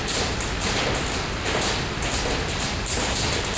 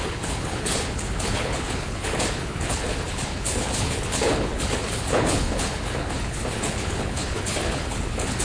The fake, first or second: second